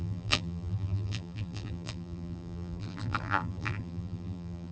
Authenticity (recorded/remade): remade